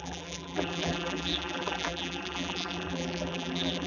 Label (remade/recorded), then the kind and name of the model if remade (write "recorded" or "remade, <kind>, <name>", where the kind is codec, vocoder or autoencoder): remade, vocoder, BigVGAN v2